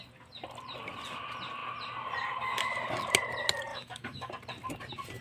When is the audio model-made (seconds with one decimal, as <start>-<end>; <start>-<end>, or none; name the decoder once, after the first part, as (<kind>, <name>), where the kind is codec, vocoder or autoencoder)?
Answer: 3.7-4.3 (autoencoder, DAC-VAE)